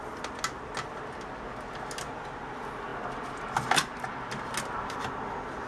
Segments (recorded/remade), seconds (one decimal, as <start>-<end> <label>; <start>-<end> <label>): 0.0-5.7 recorded

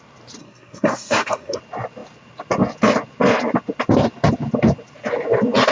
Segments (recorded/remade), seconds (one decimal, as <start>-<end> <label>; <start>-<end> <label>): 0.0-0.4 recorded; 0.4-1.6 remade; 1.6-5.7 recorded

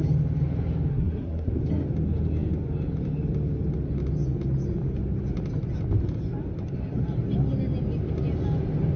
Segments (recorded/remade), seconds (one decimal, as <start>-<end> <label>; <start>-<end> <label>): 0.0-0.9 recorded; 0.9-1.5 remade; 1.5-9.0 recorded

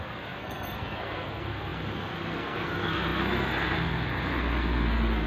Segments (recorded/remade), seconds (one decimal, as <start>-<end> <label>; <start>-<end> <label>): 0.0-5.3 remade

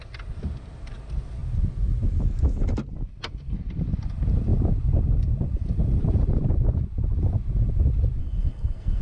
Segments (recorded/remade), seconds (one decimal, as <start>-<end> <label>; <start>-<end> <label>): 0.0-8.2 recorded; 8.2-9.0 remade

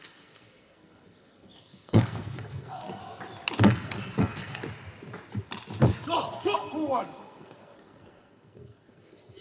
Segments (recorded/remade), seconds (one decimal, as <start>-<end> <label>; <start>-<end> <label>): 0.0-3.0 remade; 3.0-3.6 recorded; 3.6-4.6 remade; 4.6-6.3 recorded; 6.3-9.4 remade